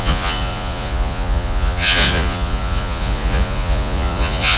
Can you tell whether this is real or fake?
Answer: fake